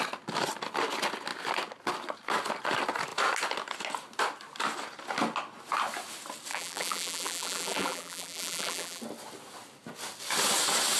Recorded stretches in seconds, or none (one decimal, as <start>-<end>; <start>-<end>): 0.0-6.5; 9.0-11.0